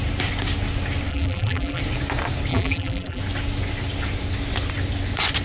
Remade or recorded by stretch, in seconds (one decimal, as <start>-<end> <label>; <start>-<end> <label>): 0.0-1.1 recorded; 1.1-1.8 remade; 1.8-2.5 recorded; 2.5-3.2 remade; 3.2-5.4 recorded